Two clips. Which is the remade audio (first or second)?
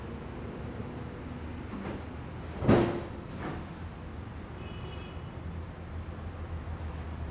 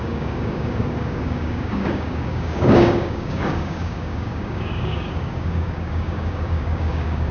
second